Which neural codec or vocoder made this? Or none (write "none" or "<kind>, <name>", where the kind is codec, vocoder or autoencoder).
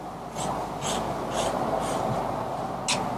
none